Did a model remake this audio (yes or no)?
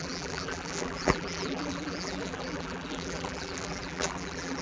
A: yes